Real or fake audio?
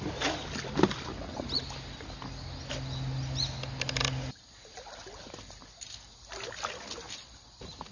real